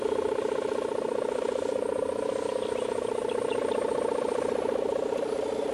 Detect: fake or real fake